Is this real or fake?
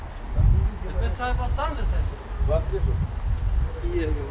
real